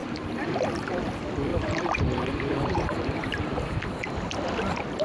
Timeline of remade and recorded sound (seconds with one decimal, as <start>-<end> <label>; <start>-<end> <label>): 0.0-1.1 remade; 1.1-1.5 recorded; 1.5-3.8 remade; 3.8-5.0 recorded

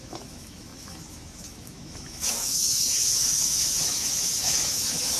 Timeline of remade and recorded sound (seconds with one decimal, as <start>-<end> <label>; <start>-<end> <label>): 0.0-5.2 remade

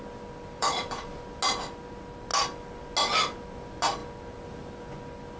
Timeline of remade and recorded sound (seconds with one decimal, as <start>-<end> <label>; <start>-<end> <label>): 0.0-0.6 recorded; 0.6-1.2 remade; 1.2-5.4 recorded

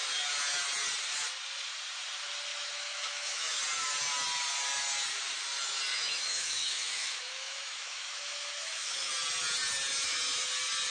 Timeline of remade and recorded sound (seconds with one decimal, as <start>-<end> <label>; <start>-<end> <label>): 0.0-2.5 recorded; 2.5-3.6 remade; 3.6-5.9 recorded; 5.9-9.1 remade; 9.1-10.9 recorded

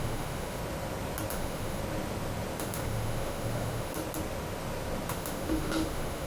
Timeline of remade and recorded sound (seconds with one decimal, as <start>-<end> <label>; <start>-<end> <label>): 0.0-0.6 remade; 0.6-1.3 recorded; 1.3-1.8 remade; 1.8-2.6 recorded; 2.6-4.0 remade; 4.0-5.1 recorded; 5.1-6.3 remade

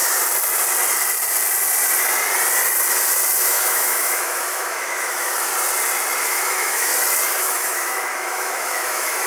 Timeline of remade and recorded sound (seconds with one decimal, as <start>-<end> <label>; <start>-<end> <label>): 0.0-3.4 recorded; 3.4-5.5 remade; 5.5-6.2 recorded; 6.2-6.9 remade; 6.9-7.4 recorded; 7.4-9.3 remade